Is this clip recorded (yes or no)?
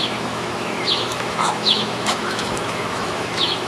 no